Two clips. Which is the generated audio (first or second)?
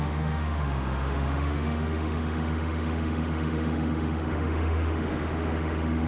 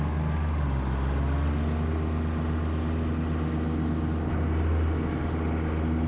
first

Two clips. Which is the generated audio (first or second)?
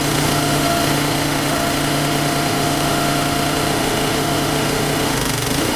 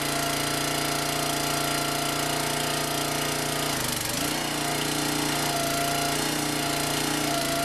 first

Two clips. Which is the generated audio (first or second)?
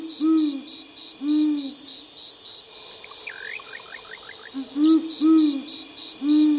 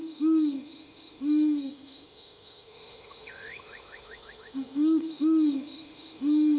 second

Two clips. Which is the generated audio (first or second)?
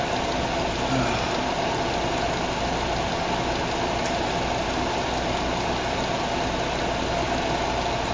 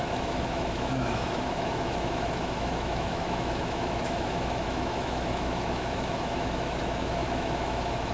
second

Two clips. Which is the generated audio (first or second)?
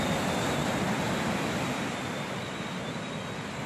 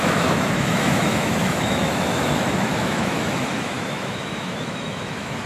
second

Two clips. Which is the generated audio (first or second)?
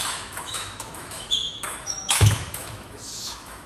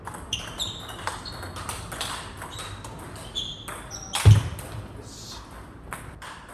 first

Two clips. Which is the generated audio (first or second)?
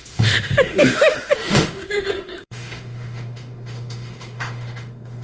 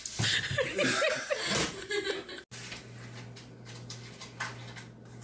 first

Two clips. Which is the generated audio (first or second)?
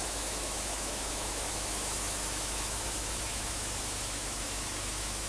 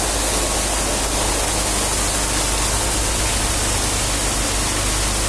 first